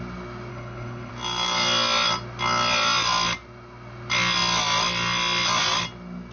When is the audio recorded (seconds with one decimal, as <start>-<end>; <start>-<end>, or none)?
0.0-0.5; 1.1-6.3

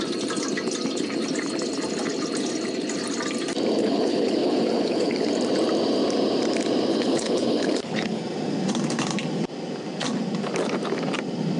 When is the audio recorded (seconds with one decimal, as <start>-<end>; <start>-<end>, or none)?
0.0-3.8; 5.3-6.9; 8.2-11.6

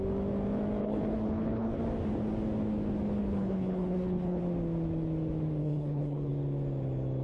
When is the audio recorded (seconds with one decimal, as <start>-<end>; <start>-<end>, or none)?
0.0-0.8; 1.8-3.2; 4.4-5.6; 6.3-7.2

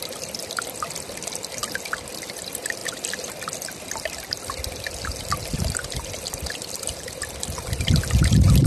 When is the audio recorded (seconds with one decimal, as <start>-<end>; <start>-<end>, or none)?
0.0-8.7

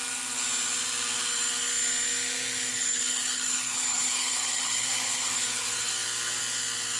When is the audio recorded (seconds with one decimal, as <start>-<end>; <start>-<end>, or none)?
0.0-2.7; 5.9-7.0